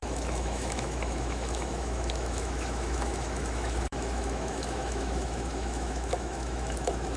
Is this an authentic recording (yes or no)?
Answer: no